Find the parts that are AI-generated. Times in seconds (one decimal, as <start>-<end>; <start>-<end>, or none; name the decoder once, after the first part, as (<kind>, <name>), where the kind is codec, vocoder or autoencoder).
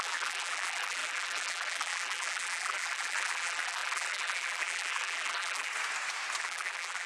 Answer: 0.0-5.7 (vocoder, BigVGAN v2); 6.4-7.1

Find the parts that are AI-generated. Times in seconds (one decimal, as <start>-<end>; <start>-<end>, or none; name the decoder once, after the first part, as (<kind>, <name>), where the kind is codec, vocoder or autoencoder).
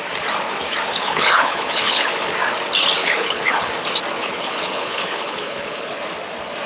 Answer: 0.9-2.1 (codec, HILCodec); 3.0-3.7; 4.2-6.0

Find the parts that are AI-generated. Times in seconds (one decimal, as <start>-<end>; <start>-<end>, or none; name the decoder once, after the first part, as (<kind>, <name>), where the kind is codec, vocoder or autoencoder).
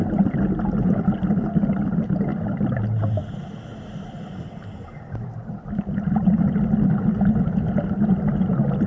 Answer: 3.7-6.5 (vocoder, BigVGAN v2)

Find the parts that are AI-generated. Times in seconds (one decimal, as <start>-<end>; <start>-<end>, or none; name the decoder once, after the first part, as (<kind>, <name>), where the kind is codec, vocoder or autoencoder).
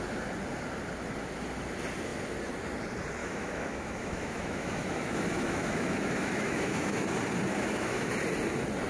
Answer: 3.2-7.1 (autoencoder, DAC-VAE); 7.5-8.1